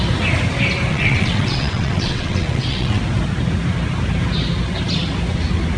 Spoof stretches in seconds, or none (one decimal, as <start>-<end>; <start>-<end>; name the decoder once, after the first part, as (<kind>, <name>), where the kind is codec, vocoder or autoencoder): 0.9-3.0 (vocoder, WaveNeXt)